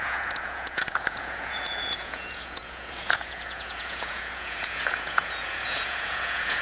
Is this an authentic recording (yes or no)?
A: no